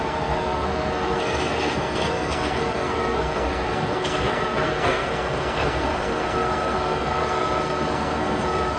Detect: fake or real fake